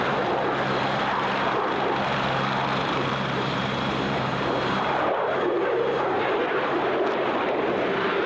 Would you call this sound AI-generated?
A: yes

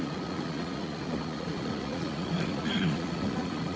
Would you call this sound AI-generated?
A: yes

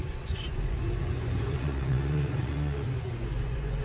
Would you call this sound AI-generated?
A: yes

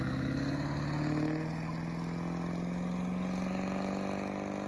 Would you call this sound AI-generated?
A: no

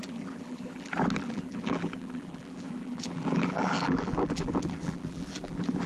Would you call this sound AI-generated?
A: yes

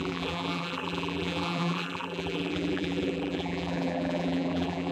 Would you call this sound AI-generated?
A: yes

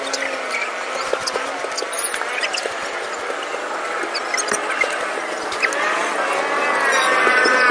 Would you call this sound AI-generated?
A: no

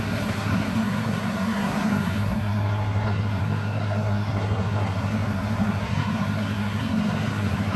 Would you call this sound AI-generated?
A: yes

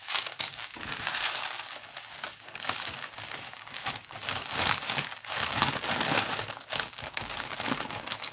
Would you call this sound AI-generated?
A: yes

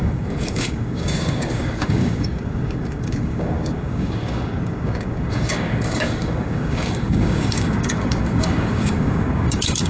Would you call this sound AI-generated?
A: yes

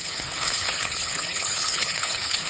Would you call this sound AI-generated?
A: yes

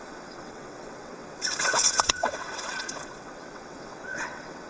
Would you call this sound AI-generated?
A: yes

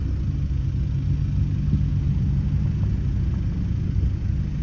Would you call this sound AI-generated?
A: no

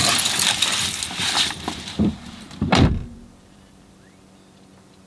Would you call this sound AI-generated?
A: yes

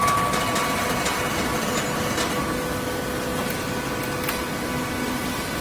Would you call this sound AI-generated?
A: no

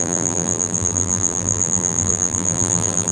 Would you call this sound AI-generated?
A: yes